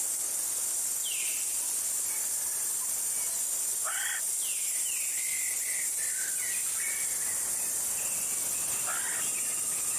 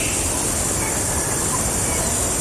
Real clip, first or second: first